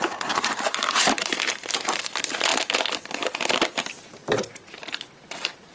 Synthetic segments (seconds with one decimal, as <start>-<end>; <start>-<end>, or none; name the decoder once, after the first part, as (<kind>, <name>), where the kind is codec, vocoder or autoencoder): none